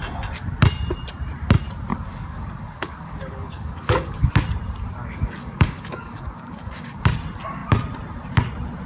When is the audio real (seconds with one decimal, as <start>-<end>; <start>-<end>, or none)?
0.0-1.9; 4.3-5.0; 7.0-8.9